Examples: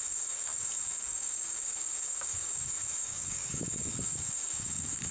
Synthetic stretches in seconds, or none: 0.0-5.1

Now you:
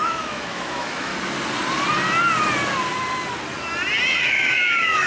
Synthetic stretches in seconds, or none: 0.0-1.1; 4.2-5.1

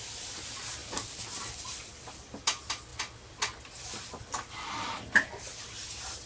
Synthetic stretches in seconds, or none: none

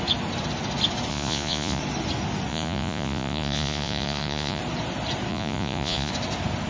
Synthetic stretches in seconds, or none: 1.1-1.8; 2.5-4.6; 5.3-6.1

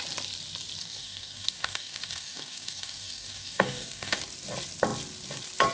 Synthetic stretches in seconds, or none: 0.8-4.2

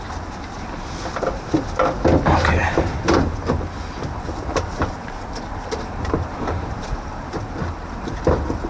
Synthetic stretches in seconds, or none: 2.6-7.3

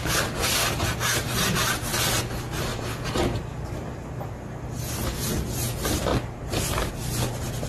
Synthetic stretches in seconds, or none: 2.7-3.4

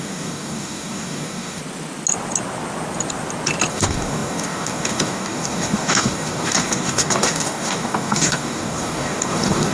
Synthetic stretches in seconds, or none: 0.0-1.6; 3.7-9.7